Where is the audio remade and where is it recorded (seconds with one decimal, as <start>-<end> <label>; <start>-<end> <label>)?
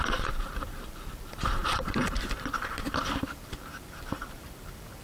0.0-5.0 remade